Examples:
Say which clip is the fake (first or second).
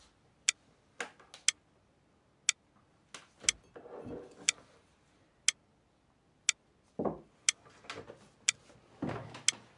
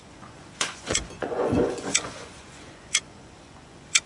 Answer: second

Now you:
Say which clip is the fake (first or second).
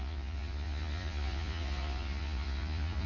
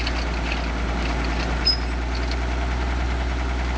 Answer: first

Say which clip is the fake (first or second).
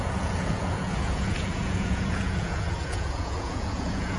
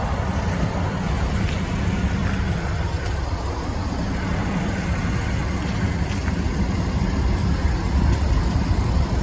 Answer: first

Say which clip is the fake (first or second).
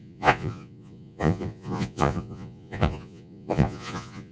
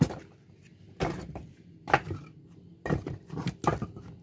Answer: first